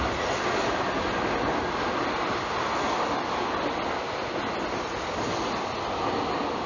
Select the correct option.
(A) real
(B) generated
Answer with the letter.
A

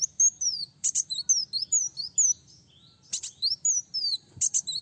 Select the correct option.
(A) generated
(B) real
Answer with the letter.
B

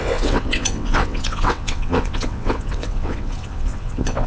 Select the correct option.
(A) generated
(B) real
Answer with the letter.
A